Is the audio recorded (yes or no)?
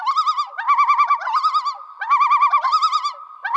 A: no